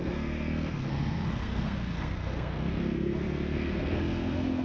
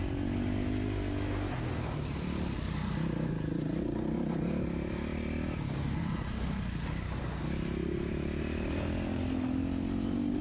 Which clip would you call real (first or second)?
second